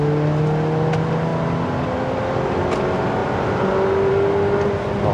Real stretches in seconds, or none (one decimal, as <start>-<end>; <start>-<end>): 0.0-5.1